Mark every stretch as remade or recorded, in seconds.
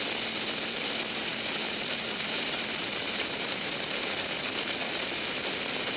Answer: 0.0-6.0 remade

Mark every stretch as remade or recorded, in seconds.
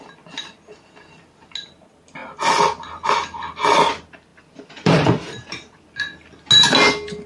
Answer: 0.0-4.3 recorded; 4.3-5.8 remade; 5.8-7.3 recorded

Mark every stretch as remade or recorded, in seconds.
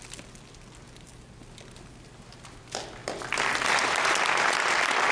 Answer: 0.0-5.1 recorded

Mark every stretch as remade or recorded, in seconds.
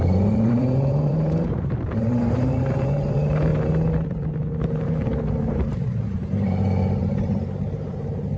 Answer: 0.0-3.5 remade; 3.5-4.9 recorded; 4.9-8.4 remade